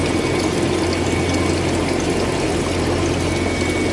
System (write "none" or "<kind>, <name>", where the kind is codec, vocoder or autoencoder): none